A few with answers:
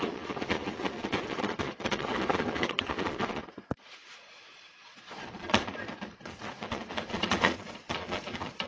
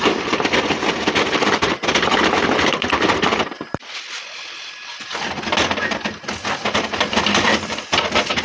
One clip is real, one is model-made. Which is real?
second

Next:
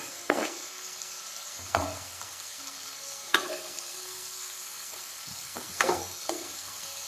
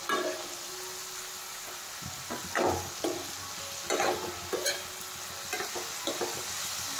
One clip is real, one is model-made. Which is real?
second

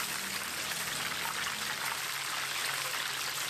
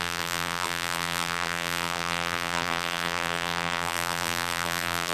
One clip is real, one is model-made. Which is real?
first